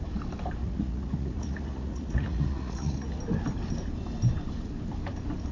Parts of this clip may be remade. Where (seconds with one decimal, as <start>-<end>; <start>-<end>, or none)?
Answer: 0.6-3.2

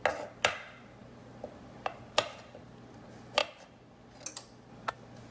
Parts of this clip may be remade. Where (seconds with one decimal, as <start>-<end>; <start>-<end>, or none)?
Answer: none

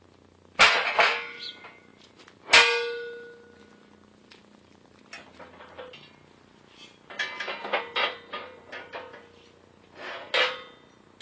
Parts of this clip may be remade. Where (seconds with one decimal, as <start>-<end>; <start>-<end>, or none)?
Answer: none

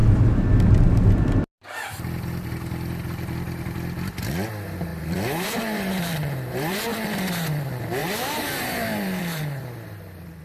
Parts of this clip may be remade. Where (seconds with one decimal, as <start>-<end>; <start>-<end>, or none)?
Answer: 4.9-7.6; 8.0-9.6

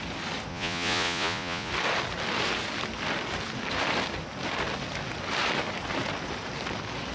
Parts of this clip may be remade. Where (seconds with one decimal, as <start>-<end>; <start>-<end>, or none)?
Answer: 0.5-1.7

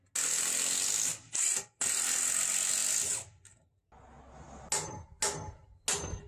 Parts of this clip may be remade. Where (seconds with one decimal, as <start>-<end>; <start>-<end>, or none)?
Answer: none